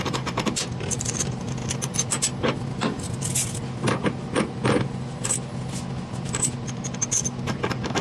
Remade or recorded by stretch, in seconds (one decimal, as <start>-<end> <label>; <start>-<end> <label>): 0.0-1.6 remade; 1.6-2.4 recorded; 2.4-3.3 remade; 3.3-8.0 recorded